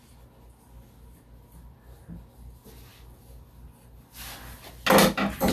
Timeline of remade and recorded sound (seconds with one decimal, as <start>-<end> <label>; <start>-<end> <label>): 0.0-5.5 recorded